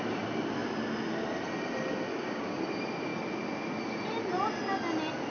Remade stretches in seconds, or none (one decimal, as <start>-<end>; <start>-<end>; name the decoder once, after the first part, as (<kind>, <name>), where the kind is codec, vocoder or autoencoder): 2.1-2.6 (codec, DAC)